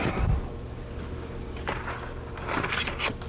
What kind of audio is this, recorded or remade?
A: recorded